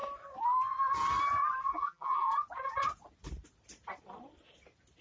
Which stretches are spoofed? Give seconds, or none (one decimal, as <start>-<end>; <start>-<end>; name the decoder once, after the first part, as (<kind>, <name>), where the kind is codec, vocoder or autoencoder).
1.7-2.3 (vocoder, BigVGAN v2)